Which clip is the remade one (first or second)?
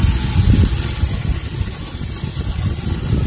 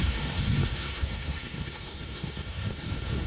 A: second